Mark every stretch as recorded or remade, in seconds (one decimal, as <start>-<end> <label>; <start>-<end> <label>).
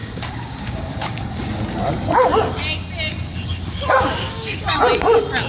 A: 0.0-1.3 remade; 1.3-3.3 recorded; 3.3-4.8 remade; 4.8-5.5 recorded